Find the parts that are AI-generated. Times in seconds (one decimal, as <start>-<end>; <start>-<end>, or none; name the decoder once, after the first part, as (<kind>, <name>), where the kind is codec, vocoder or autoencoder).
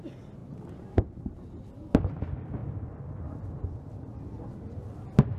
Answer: none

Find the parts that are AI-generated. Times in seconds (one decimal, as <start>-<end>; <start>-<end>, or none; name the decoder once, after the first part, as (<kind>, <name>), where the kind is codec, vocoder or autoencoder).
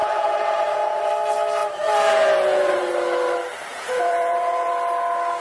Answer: 0.0-1.1 (vocoder, Vocos); 1.6-2.8; 3.7-4.7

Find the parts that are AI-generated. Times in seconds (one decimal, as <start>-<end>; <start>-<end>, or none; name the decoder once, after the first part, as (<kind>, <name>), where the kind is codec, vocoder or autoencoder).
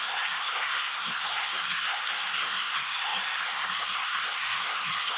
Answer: 0.0-5.2 (codec, SNAC)